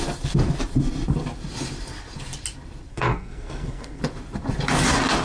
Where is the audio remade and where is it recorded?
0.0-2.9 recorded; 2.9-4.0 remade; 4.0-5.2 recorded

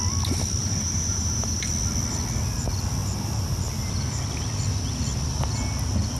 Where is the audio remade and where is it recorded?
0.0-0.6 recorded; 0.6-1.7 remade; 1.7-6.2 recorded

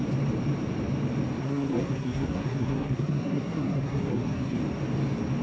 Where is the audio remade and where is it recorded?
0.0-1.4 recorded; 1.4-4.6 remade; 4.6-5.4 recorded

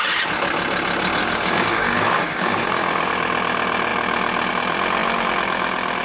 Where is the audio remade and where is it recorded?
0.0-1.2 recorded; 1.2-3.1 remade; 3.1-6.0 recorded

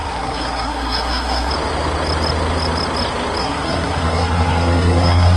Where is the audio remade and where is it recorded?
0.0-1.5 remade; 1.5-3.4 recorded; 3.4-5.4 remade